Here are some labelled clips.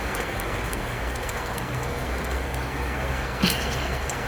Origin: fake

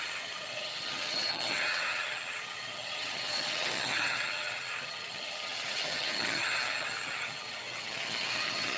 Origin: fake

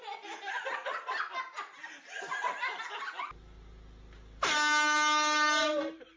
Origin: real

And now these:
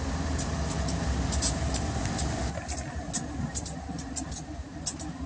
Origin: real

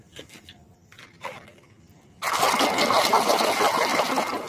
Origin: real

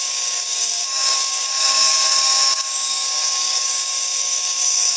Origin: fake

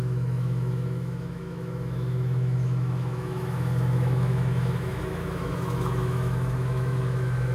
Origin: fake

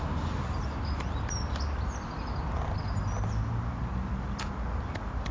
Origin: real